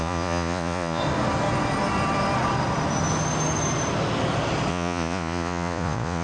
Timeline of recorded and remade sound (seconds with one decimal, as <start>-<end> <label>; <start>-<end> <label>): 0.0-1.0 remade; 1.0-4.7 recorded; 4.7-6.2 remade